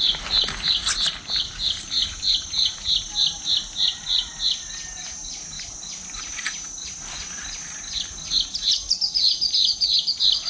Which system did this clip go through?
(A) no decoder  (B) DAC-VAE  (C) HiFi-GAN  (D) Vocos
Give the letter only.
A